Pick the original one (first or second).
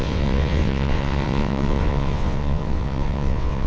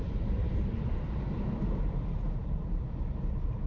second